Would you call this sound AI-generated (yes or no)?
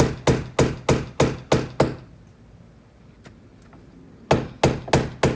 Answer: no